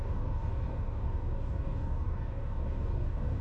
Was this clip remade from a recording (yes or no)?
yes